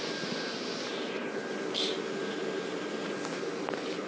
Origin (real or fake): real